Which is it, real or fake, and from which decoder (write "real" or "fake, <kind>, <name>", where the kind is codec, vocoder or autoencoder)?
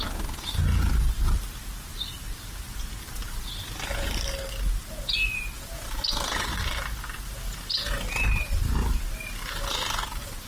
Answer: real